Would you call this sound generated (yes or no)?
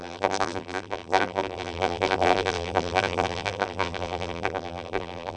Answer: yes